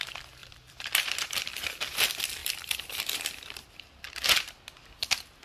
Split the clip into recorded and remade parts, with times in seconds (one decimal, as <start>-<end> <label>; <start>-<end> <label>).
0.0-0.4 recorded; 0.4-1.5 remade; 1.5-2.4 recorded; 2.4-4.2 remade; 4.2-5.4 recorded